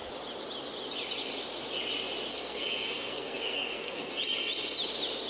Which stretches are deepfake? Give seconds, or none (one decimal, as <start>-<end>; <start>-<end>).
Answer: 2.3-4.1